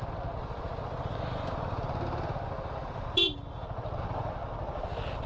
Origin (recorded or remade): recorded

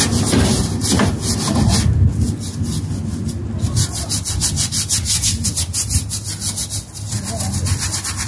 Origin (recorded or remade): recorded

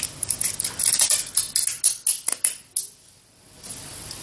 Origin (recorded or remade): recorded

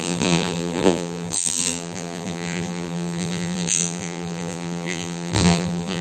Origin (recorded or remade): remade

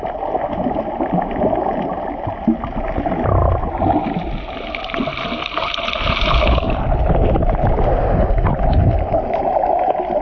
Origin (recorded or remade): recorded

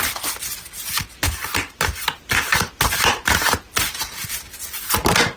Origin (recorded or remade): recorded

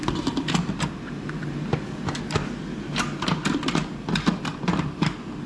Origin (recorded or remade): recorded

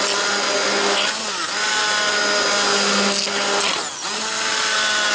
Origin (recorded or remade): recorded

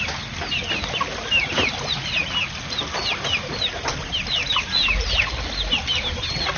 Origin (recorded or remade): recorded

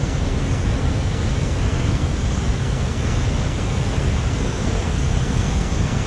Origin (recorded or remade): remade